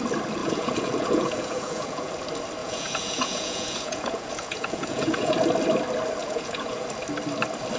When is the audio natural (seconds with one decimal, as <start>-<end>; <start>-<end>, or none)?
0.0-0.4; 2.1-2.6; 5.3-6.2; 6.9-7.8